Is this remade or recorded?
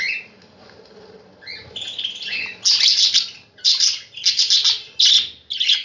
recorded